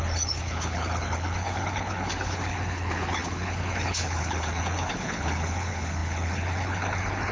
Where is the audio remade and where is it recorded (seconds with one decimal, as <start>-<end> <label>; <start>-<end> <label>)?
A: 0.0-7.3 remade